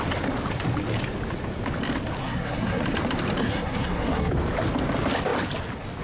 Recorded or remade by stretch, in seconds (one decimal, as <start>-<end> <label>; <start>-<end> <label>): 0.0-2.2 recorded; 2.2-2.8 remade; 2.8-3.4 recorded; 3.4-4.3 remade; 4.3-6.0 recorded